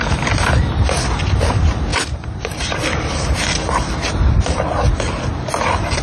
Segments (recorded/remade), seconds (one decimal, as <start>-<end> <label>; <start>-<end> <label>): 0.0-6.0 recorded